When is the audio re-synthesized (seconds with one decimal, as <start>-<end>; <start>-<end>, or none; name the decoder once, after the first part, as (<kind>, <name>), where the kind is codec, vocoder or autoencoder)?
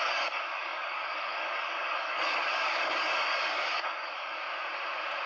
0.0-4.4 (codec, DAC)